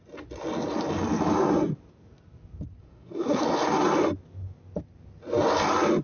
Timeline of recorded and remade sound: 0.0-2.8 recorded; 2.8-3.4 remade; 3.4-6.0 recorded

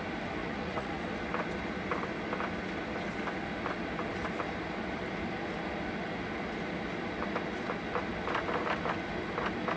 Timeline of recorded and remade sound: 0.0-0.4 recorded; 0.4-1.0 remade; 1.0-9.8 recorded

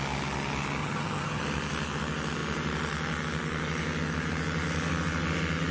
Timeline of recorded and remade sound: 0.0-0.8 recorded; 0.8-1.4 remade; 1.4-5.7 recorded

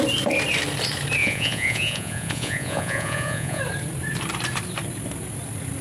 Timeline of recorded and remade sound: 0.0-1.2 recorded; 1.2-3.6 remade; 3.6-5.8 recorded

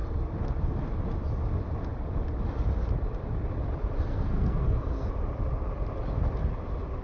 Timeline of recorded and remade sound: 0.0-4.1 recorded; 4.1-5.1 remade; 5.1-7.0 recorded

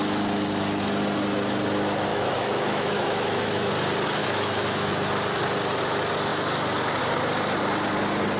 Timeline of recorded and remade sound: 0.0-2.1 recorded; 2.1-3.7 remade; 3.7-4.2 recorded; 4.2-4.9 remade; 4.9-8.4 recorded

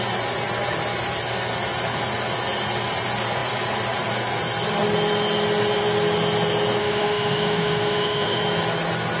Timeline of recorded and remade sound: 0.0-6.8 recorded; 6.8-8.4 remade; 8.4-9.2 recorded